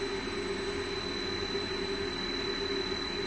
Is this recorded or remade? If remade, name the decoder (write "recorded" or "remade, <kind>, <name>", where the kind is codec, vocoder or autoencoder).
recorded